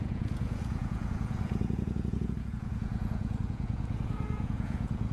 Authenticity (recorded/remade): remade